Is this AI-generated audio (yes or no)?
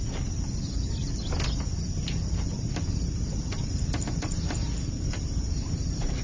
no